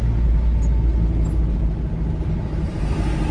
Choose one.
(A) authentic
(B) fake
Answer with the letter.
A